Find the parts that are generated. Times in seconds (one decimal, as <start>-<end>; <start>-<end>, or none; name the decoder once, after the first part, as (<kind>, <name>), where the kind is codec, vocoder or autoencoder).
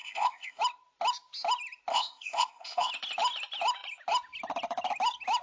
0.0-0.6 (codec, ZipCodec); 1.9-2.9